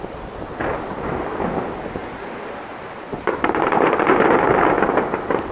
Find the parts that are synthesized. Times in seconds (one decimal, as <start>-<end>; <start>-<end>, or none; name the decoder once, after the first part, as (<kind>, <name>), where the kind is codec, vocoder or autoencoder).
2.0-4.2 (vocoder, BigVGAN v2)